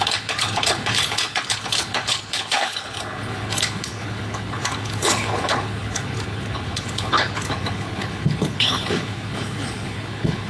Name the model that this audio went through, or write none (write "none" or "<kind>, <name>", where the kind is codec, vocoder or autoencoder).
codec, HILCodec